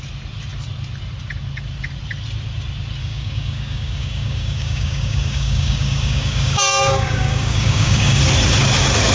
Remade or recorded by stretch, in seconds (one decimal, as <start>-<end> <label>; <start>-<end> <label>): 0.0-3.0 recorded; 3.0-8.2 remade; 8.2-9.1 recorded